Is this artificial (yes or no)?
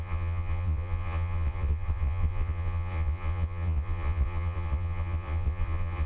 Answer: yes